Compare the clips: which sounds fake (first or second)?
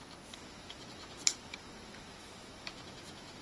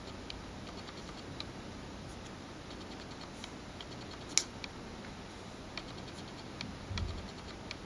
first